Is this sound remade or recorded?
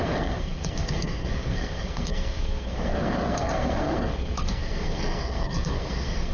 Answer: remade